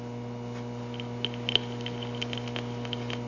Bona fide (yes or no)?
yes